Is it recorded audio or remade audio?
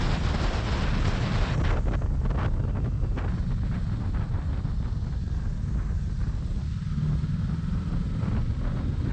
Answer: recorded